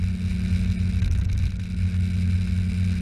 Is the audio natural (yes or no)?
yes